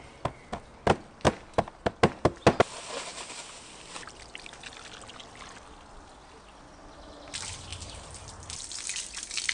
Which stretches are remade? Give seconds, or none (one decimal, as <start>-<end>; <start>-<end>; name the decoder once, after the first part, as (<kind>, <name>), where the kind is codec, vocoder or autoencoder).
none